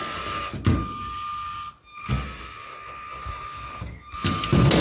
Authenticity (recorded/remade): recorded